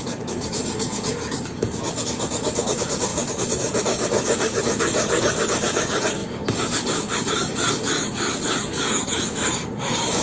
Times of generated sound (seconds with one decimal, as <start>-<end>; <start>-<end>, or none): 0.0-10.2